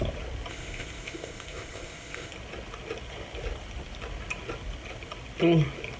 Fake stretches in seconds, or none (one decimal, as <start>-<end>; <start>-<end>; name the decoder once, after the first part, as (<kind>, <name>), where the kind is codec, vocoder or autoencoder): 0.5-2.3 (codec, ZipCodec)